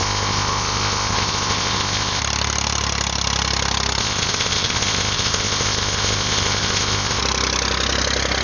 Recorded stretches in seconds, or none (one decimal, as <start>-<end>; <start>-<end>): 2.2-4.0; 7.2-8.4